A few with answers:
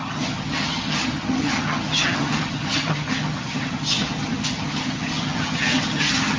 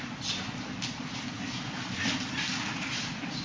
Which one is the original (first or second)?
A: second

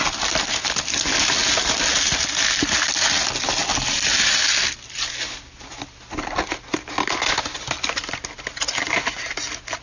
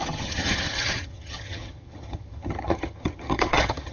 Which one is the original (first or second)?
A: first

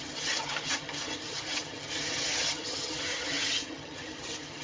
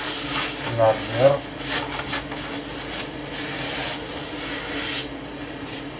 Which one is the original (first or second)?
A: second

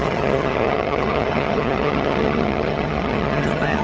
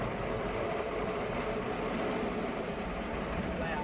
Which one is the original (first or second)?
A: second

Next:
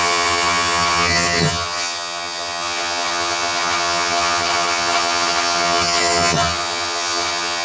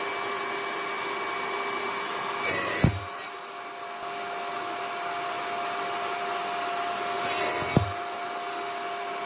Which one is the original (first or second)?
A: second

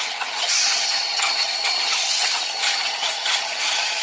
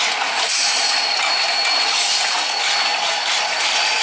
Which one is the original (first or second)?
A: second